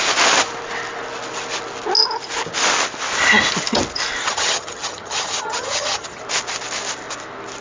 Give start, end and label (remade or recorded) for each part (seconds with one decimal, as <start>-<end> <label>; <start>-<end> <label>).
0.0-4.2 recorded; 4.2-6.2 remade; 6.2-7.6 recorded